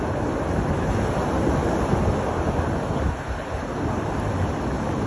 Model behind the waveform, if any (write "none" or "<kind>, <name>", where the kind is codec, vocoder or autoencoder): none